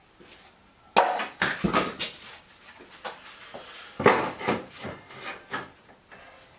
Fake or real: real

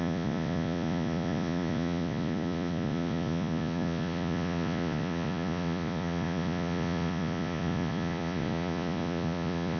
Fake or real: fake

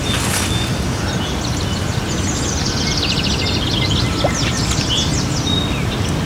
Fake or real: real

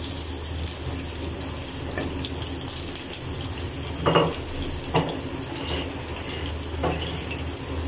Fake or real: real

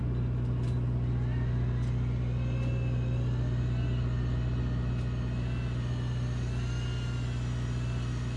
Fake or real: real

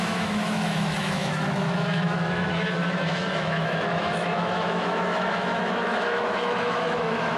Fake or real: fake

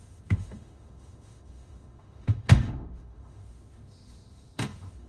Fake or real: fake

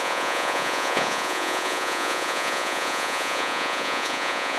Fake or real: fake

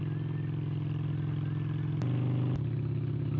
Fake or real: real